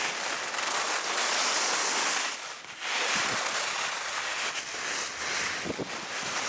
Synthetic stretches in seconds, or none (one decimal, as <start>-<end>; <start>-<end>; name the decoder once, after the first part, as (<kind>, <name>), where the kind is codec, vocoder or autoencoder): none